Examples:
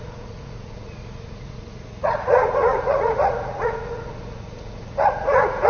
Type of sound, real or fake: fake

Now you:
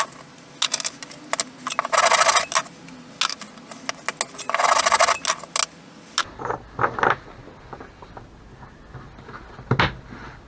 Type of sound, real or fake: real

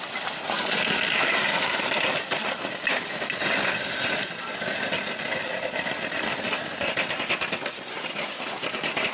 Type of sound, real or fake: real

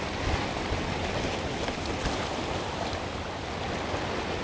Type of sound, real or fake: real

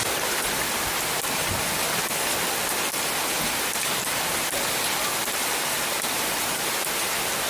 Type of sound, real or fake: real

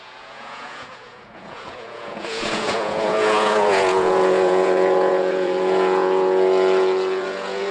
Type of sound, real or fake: fake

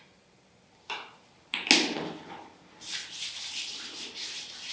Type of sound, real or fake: real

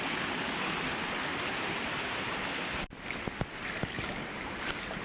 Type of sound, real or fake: real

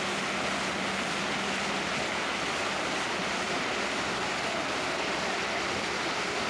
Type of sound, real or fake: real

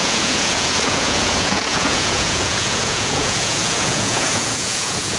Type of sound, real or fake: fake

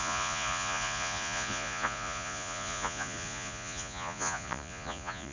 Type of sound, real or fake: fake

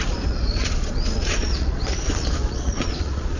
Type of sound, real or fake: fake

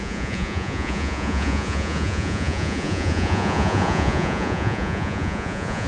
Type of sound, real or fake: fake